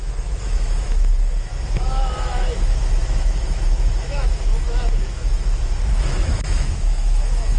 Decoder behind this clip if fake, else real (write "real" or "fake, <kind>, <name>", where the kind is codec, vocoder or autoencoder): fake, autoencoder, DAC-VAE